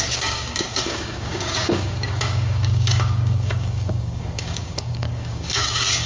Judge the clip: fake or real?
fake